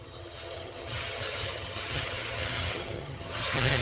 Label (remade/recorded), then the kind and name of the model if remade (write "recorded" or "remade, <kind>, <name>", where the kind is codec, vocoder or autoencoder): remade, vocoder, HiFi-GAN